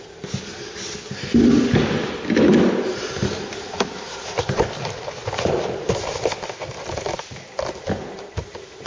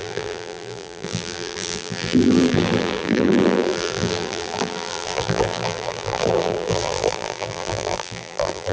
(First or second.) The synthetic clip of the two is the second